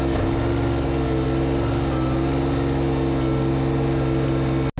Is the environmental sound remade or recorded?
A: recorded